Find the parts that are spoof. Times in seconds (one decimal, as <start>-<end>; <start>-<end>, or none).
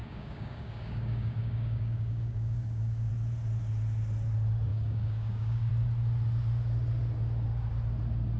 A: 0.0-3.1; 4.7-5.7